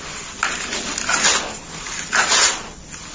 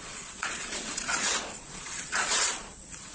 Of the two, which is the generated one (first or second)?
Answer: second